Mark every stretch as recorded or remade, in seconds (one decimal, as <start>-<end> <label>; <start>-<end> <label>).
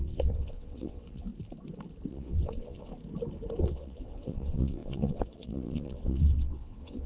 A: 0.0-1.3 remade; 1.3-2.1 recorded; 2.1-2.9 remade; 2.9-3.6 recorded; 3.6-7.1 remade